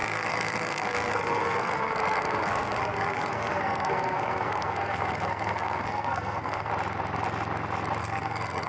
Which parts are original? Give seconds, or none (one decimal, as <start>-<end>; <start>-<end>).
6.7-8.0